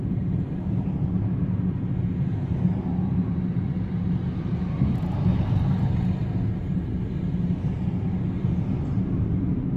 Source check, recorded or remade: recorded